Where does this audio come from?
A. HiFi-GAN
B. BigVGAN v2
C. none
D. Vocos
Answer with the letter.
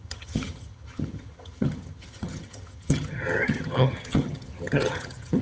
A